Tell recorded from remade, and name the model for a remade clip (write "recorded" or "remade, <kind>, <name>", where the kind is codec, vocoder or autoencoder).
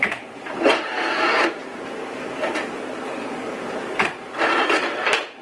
remade, vocoder, BigVGAN v2